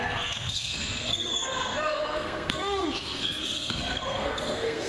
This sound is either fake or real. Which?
fake